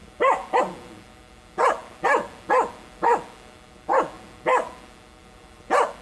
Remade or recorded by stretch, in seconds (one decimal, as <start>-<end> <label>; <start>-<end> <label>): 0.0-6.0 recorded